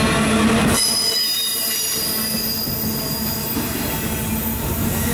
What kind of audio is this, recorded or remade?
recorded